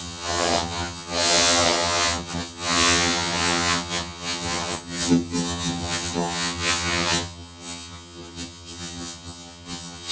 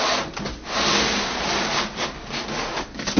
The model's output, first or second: first